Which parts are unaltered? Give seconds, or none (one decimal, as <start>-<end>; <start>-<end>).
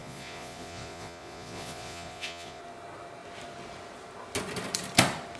2.6-5.4